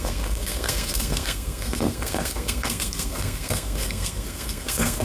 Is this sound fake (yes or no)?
yes